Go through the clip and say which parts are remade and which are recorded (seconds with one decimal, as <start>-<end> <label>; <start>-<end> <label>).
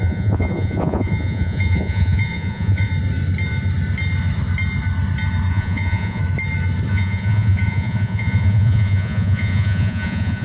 0.0-2.9 remade; 2.9-5.5 recorded; 5.5-6.2 remade; 6.2-6.9 recorded; 6.9-10.4 remade